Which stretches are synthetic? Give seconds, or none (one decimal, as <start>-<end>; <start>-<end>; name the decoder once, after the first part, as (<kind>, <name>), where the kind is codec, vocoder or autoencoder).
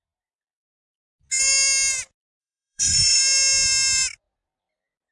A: 2.4-3.2 (autoencoder, DAC-VAE)